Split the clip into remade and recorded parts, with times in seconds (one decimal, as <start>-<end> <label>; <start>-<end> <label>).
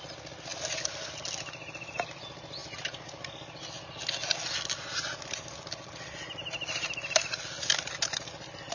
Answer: 0.0-8.7 recorded